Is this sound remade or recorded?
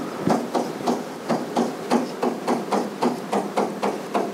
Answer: remade